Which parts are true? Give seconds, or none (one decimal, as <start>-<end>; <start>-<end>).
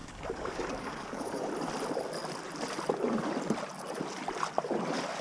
1.5-5.2